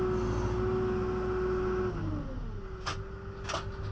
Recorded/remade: recorded